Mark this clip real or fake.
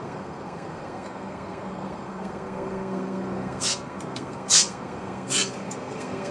fake